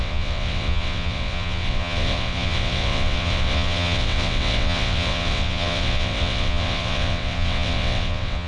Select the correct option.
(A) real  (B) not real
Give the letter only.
B